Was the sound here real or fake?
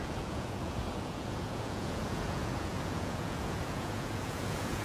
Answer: fake